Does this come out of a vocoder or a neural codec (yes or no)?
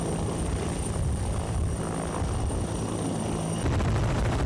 no